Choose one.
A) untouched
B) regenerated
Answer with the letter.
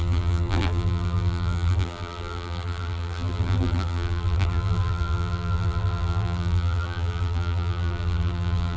B